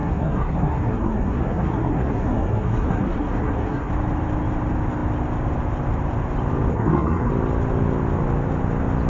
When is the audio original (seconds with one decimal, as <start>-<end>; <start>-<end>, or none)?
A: 3.9-6.7; 7.3-9.1